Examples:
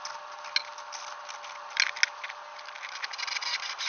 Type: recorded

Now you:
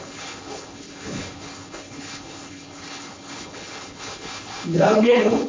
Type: remade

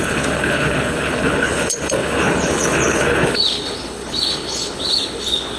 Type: remade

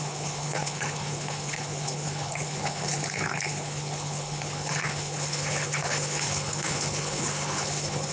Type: remade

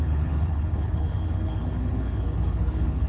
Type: remade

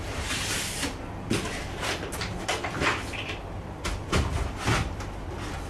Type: recorded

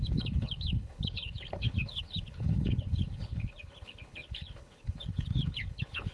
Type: remade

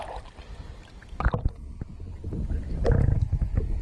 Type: recorded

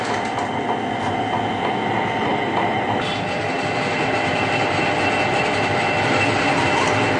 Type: recorded